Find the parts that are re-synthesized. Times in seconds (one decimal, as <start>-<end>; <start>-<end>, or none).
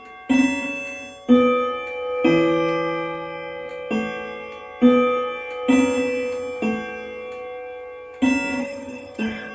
8.6-9.5